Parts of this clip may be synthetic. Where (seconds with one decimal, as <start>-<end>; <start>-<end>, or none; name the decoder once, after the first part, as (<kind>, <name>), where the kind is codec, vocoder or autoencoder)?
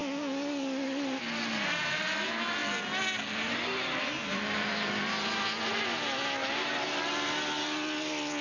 none